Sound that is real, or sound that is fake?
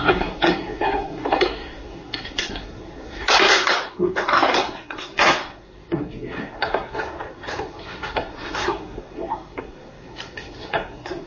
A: fake